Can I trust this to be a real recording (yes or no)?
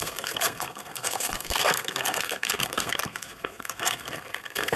no